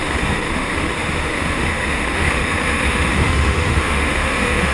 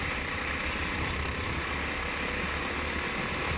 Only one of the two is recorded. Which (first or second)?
second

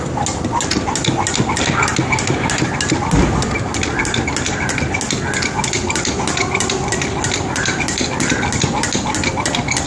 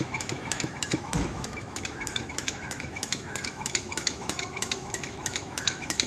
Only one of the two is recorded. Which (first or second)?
first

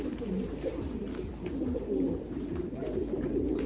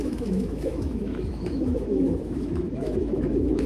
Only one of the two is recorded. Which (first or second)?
first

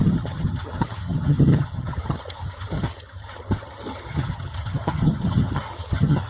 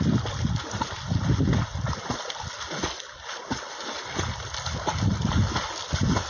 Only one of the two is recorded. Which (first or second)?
second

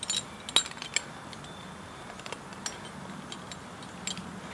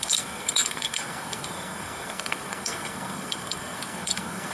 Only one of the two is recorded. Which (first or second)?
first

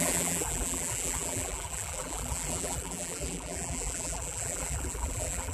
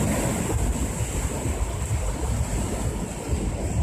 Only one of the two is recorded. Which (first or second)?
second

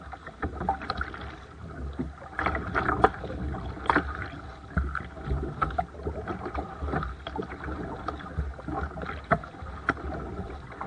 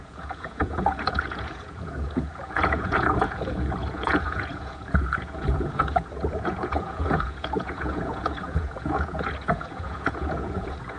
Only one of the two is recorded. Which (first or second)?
first